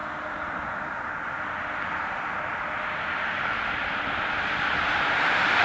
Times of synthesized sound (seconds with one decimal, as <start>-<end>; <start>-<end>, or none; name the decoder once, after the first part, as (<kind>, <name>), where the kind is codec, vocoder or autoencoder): 2.4-5.6 (vocoder, BigVGAN v2)